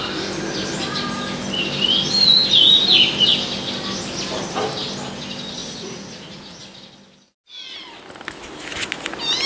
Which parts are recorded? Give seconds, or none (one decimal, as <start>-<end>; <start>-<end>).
0.0-5.6; 6.6-9.5